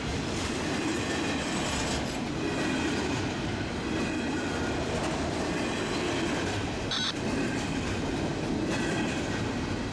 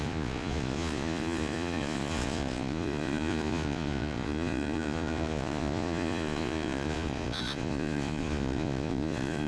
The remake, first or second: second